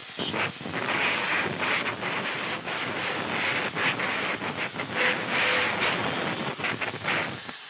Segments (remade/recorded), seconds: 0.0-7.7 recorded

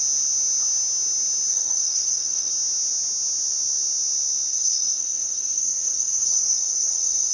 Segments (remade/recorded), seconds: 0.0-1.5 recorded; 1.5-2.5 remade; 2.5-4.5 recorded; 4.5-7.3 remade

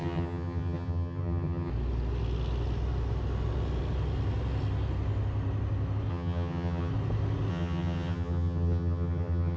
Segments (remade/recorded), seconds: 0.0-1.7 remade; 1.7-6.1 recorded; 6.1-6.9 remade; 6.9-7.5 recorded; 7.5-9.6 remade

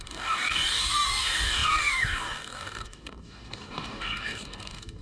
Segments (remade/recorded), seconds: 0.0-5.0 remade

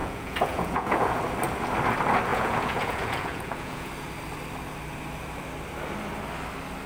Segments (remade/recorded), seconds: 0.0-1.2 remade; 1.2-2.3 recorded; 2.3-3.9 remade; 3.9-6.9 recorded

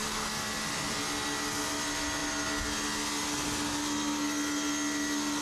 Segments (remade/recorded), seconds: 0.0-5.4 recorded

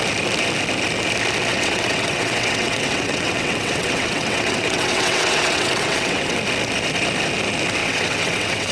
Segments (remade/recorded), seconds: 0.0-1.5 recorded; 1.5-6.4 remade; 6.4-7.8 recorded; 7.8-8.7 remade

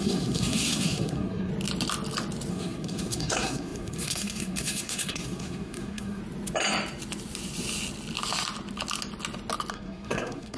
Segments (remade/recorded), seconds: 0.0-1.5 remade; 1.5-2.5 recorded; 2.5-6.2 remade; 6.2-9.7 recorded; 9.7-10.6 remade